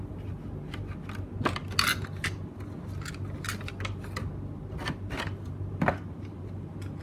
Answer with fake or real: real